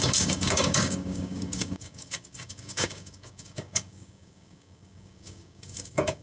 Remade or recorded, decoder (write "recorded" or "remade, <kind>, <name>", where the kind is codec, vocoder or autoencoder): remade, codec, DAC